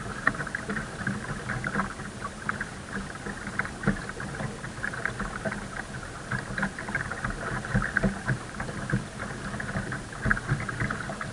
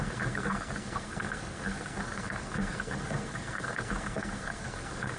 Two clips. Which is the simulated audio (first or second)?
second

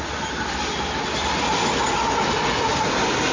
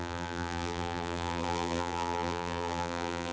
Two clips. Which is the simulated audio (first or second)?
second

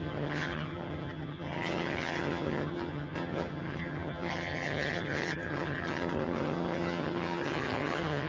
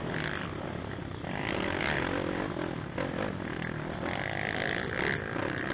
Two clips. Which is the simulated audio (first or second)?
first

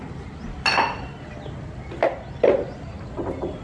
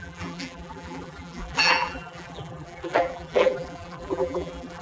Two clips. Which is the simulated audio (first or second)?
second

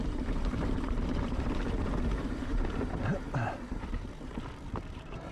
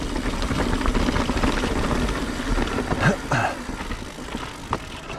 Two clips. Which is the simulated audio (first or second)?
first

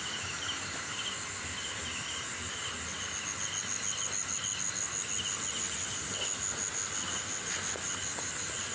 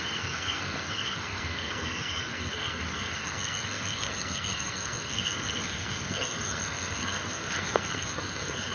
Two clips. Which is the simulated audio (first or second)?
second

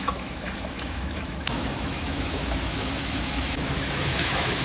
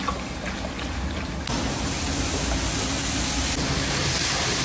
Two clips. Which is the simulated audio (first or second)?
first